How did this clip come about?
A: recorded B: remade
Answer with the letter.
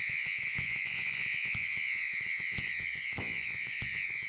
B